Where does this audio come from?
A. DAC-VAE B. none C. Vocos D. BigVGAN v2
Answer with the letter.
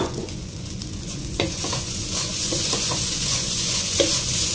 C